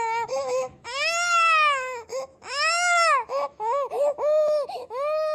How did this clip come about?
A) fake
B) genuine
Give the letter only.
A